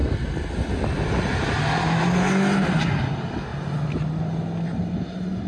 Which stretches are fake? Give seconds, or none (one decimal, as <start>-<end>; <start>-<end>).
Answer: none